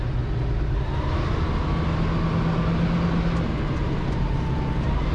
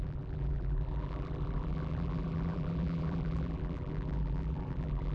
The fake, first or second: second